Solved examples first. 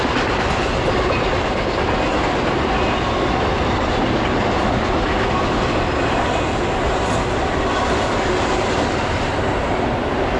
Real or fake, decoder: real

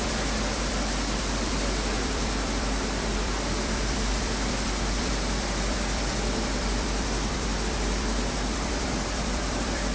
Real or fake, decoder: fake, vocoder, BigVGAN v2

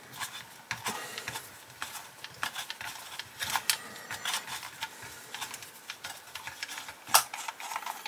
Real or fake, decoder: real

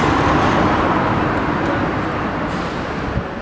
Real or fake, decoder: fake, vocoder, BigVGAN v2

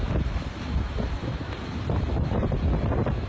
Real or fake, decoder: fake, vocoder, BigVGAN v2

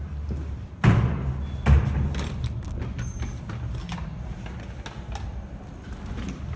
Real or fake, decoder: real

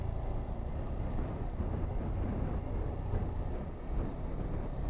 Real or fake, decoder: real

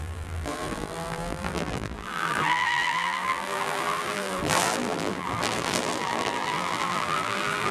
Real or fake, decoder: fake, vocoder, BigVGAN v2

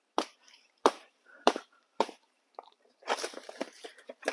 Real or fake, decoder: fake, vocoder, BigVGAN v2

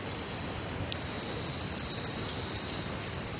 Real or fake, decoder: real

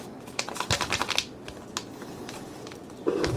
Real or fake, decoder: real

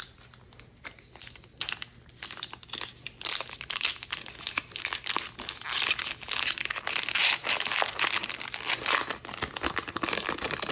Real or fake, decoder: real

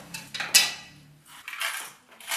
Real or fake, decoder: real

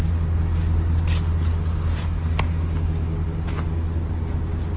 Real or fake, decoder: real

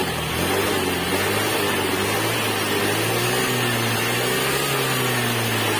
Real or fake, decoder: real